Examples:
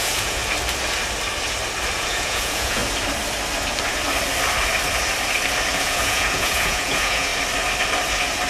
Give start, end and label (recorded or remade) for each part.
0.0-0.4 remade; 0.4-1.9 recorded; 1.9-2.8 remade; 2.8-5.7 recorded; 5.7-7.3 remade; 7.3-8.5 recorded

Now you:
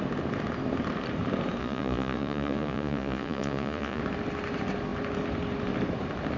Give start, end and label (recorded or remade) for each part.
0.0-1.6 recorded; 1.6-4.0 remade; 4.0-6.4 recorded

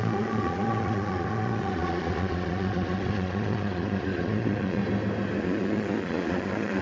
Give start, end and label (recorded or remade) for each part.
0.0-4.8 remade; 4.8-5.4 recorded; 5.4-6.8 remade

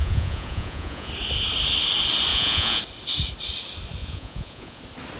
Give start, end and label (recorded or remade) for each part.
0.0-1.1 remade; 1.1-2.3 recorded; 2.3-2.8 remade; 2.8-4.0 recorded; 4.0-4.8 remade; 4.8-5.2 recorded

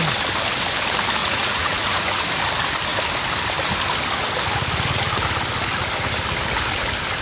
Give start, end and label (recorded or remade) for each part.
0.0-1.2 recorded; 1.2-2.2 remade; 2.2-7.2 recorded